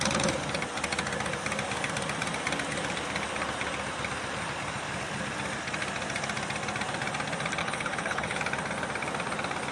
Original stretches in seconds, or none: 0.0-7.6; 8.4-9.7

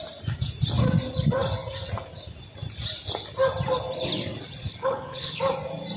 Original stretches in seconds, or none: 0.0-4.6; 5.4-6.0

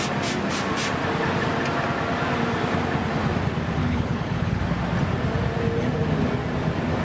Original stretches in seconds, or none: 0.0-3.8; 4.6-7.0

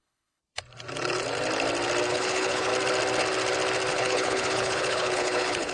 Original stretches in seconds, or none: 0.4-2.1; 2.7-3.9

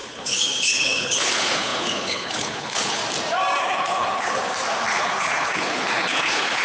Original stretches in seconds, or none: 3.0-3.6; 4.4-4.9

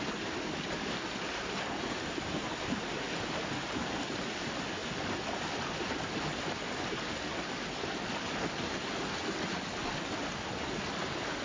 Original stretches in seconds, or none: 0.0-11.4

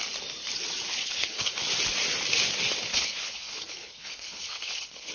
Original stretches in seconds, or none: 0.0-0.9; 1.6-2.9

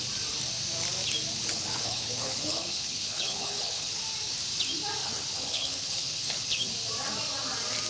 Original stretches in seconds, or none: 0.0-1.4; 4.0-5.0; 6.7-7.9